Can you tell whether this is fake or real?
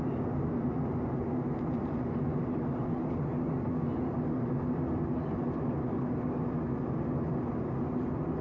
real